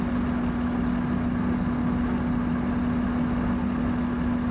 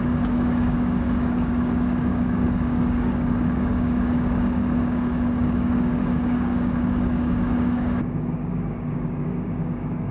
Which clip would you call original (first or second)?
first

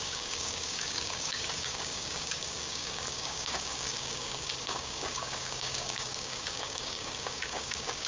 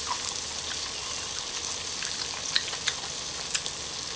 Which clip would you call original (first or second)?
second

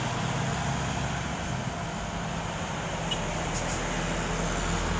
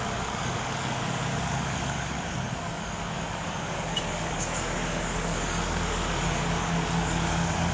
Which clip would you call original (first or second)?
first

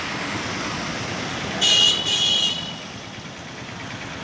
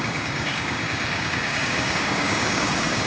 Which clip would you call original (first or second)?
first